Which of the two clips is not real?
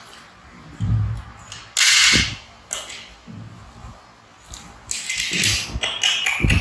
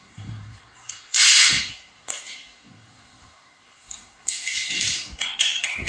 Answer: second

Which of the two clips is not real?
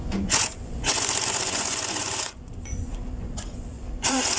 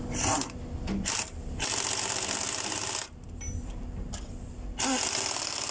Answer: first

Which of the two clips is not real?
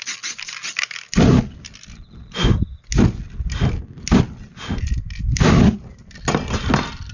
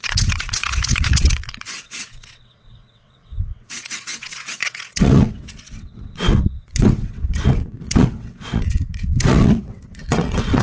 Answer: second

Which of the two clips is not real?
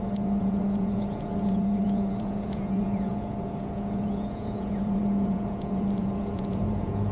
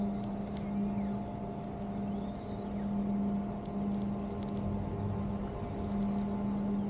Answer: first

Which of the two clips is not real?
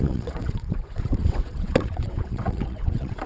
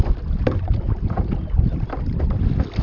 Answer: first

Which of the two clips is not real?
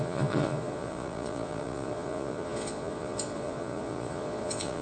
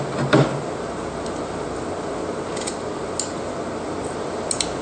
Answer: first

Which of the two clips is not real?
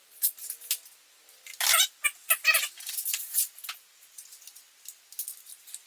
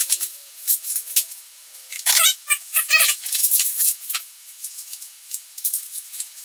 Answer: second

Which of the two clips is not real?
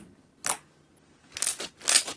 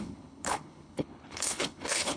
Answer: second